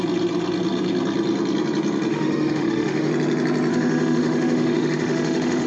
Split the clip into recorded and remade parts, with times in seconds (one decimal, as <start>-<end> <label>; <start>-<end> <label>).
0.0-2.1 recorded; 2.1-3.1 remade; 3.1-3.7 recorded; 3.7-5.7 remade